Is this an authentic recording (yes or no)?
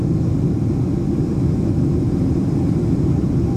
yes